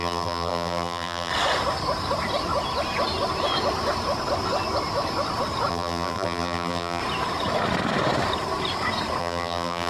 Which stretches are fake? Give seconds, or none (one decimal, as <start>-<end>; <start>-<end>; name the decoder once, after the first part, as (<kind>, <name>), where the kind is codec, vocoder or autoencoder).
0.0-1.3 (vocoder, BigVGAN v2); 5.7-7.0; 9.2-9.9